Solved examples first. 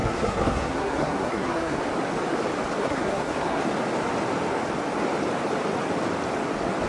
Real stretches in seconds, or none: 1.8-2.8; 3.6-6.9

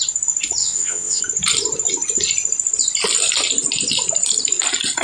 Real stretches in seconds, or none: 0.0-0.6; 1.2-5.0